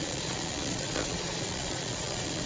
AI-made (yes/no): yes